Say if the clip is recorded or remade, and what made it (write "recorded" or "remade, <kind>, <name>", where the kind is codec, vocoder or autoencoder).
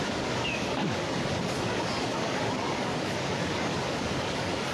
remade, codec, DAC